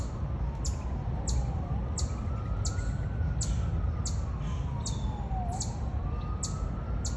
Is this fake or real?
real